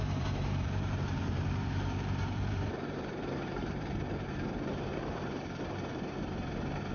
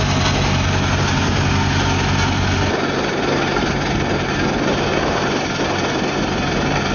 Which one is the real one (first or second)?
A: second